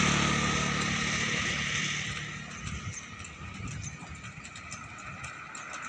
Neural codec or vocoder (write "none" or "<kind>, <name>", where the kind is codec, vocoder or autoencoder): none